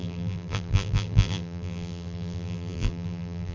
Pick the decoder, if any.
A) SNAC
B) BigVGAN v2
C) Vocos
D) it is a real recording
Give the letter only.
B